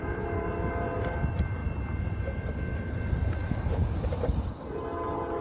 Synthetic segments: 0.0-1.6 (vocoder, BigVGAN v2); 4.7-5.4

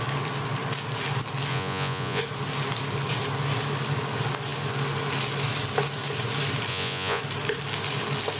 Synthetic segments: 1.5-2.2 (vocoder, Vocos); 6.7-7.2

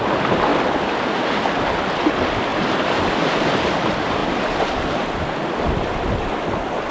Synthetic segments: none

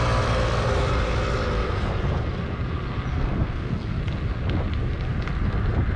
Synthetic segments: 3.1-4.0 (codec, SNAC)